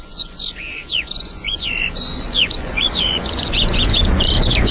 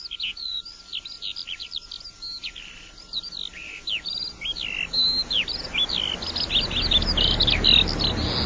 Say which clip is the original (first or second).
second